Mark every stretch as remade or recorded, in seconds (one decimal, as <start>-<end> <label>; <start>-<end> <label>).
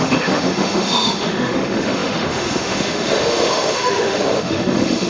0.0-5.1 remade